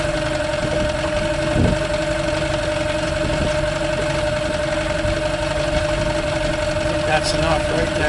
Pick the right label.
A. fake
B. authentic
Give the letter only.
B